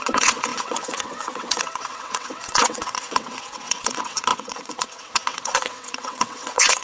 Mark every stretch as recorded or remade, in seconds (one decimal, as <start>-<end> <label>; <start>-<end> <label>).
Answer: 0.0-6.8 remade